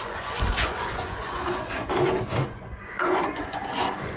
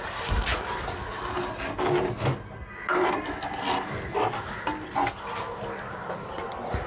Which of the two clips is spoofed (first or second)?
first